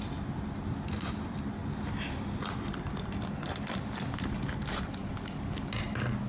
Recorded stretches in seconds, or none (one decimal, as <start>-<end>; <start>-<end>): 0.0-6.3